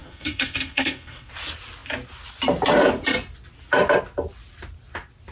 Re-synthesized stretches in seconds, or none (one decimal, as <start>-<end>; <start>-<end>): 0.0-1.3